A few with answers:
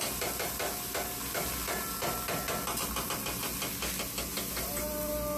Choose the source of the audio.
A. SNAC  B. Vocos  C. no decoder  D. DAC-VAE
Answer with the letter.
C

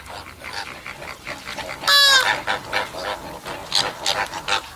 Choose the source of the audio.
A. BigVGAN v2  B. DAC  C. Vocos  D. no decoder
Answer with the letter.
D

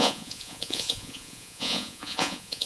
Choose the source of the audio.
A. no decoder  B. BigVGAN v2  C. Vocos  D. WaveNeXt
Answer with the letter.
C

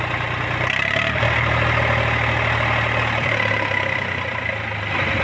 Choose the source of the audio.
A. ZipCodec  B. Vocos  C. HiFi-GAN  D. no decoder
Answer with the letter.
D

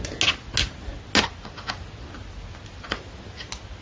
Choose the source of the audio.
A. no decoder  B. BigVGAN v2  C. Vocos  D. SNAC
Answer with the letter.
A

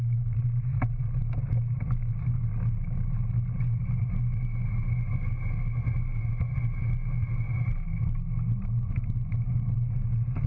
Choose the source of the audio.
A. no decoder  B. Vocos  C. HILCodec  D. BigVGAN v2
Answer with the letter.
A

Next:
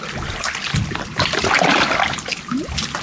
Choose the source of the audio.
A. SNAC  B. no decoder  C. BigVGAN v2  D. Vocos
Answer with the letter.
B